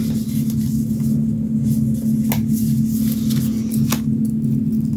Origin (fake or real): real